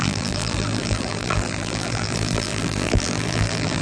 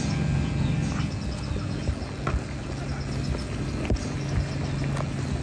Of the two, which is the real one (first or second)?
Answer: second